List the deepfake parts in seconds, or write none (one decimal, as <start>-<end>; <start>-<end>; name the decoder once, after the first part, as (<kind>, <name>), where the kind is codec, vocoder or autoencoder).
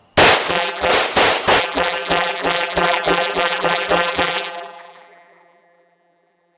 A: 0.5-0.9 (vocoder, BigVGAN v2); 1.6-6.6